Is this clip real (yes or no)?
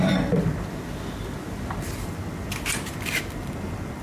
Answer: yes